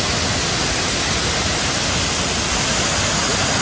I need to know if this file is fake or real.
real